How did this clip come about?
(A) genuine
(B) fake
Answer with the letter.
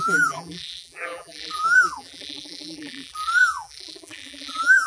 B